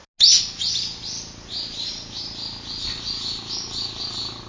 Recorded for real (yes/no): yes